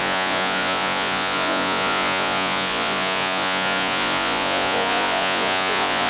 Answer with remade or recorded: remade